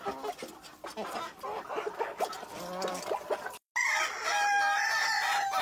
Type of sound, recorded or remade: recorded